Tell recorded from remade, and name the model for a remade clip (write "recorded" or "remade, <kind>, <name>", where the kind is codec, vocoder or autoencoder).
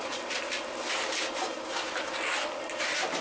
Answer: recorded